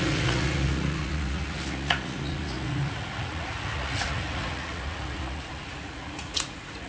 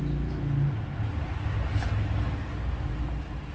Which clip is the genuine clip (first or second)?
second